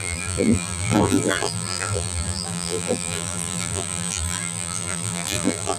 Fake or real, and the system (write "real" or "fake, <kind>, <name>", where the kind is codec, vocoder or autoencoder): fake, vocoder, BigVGAN v2